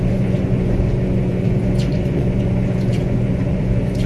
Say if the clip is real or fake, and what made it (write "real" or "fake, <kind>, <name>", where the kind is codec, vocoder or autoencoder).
fake, vocoder, Vocos